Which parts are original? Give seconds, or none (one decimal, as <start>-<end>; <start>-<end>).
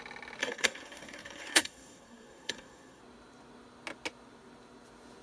0.0-0.4; 3.0-5.2